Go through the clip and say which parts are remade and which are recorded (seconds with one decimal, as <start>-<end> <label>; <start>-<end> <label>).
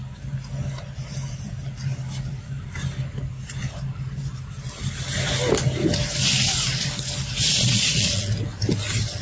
0.0-7.4 recorded; 7.4-8.3 remade; 8.3-9.2 recorded